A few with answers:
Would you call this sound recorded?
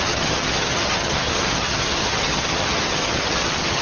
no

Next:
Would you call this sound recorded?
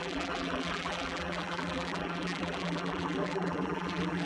no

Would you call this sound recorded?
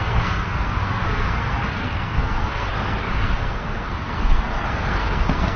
no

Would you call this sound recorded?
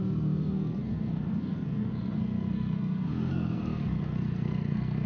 no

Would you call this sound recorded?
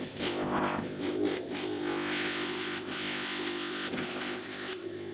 no